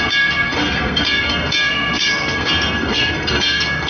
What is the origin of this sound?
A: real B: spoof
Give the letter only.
B